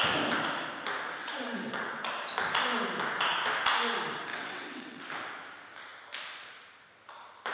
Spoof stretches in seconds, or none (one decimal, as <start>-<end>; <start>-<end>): 1.2-2.1; 4.3-5.0